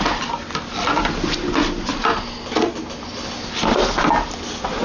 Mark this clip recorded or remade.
recorded